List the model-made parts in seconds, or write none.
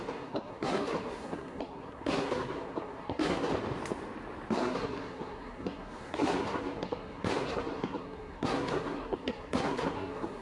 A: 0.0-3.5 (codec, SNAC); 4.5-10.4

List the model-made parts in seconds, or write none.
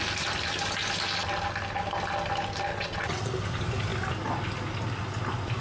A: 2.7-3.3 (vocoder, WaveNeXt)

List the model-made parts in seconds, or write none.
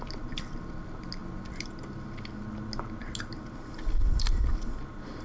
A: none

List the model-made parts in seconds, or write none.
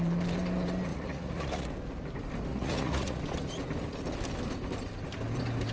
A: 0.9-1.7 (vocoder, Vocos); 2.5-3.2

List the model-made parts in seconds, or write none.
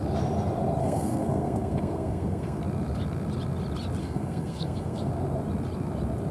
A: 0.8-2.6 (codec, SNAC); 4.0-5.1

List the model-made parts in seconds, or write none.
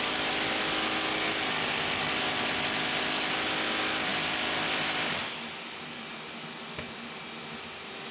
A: none